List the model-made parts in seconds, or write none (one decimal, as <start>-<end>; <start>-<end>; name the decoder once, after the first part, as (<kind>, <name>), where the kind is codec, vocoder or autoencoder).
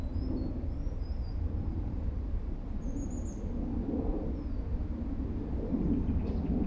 0.5-2.0 (vocoder, BigVGAN v2); 4.7-6.2